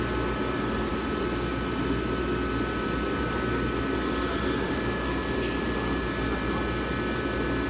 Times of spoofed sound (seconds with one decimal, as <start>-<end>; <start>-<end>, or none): none